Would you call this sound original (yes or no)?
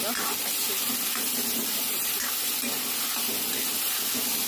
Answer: yes